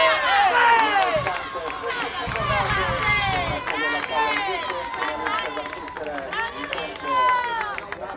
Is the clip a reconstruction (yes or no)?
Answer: no